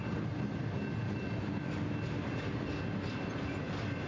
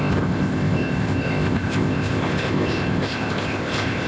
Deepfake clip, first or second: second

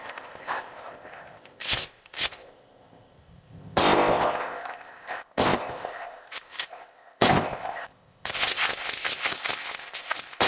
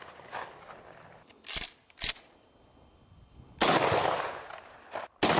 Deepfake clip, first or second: first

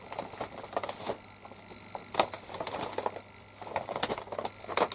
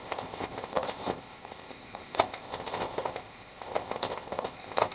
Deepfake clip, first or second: second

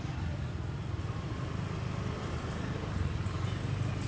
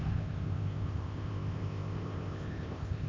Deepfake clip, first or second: second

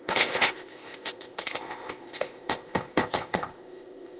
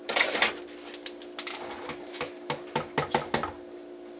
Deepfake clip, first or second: first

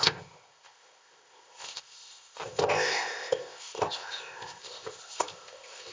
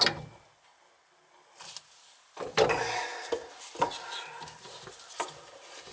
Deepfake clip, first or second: first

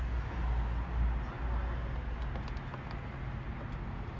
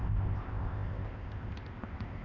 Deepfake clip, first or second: second